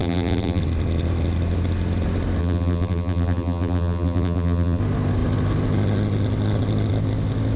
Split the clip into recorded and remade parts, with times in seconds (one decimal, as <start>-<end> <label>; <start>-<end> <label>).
0.0-0.6 remade; 0.6-2.4 recorded; 2.4-4.8 remade; 4.8-7.6 recorded